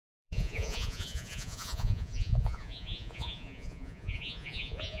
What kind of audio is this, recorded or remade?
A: remade